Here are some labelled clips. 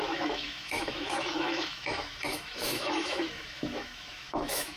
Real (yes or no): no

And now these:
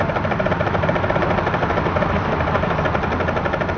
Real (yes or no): yes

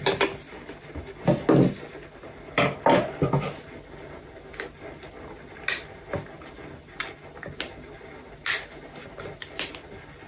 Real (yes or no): yes